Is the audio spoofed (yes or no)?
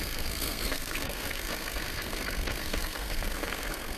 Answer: yes